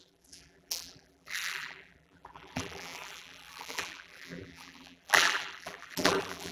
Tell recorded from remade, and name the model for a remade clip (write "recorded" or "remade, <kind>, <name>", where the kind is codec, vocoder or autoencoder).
remade, vocoder, BigVGAN v2